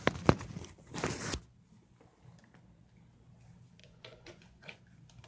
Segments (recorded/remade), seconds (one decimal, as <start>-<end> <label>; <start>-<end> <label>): 0.0-3.8 recorded; 3.8-4.8 remade; 4.8-5.3 recorded